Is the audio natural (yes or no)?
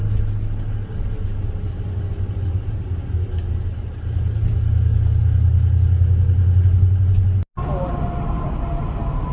yes